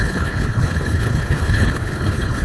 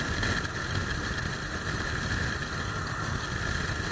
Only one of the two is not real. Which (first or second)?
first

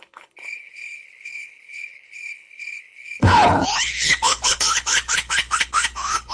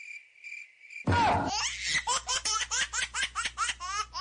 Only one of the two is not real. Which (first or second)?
first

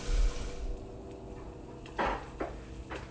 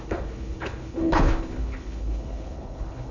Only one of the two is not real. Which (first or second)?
second